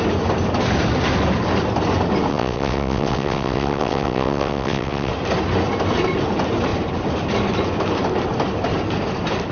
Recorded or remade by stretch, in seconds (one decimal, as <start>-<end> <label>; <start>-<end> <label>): 0.0-2.3 recorded; 2.3-5.1 remade; 5.1-9.5 recorded